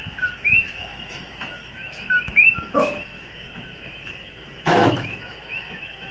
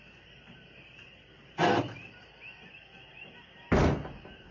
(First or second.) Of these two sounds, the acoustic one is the second